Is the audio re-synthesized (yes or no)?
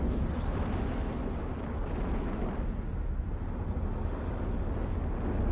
no